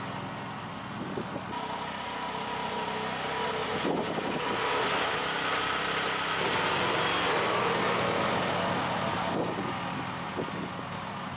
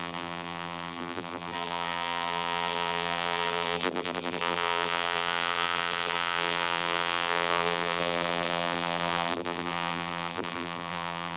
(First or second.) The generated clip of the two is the second